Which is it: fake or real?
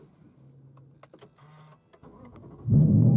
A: real